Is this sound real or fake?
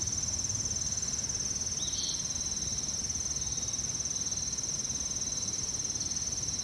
real